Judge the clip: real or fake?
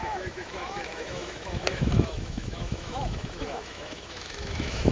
fake